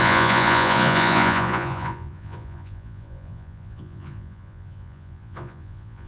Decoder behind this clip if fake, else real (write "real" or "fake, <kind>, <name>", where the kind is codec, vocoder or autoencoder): fake, vocoder, Vocos